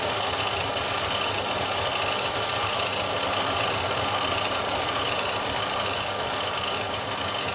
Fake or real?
real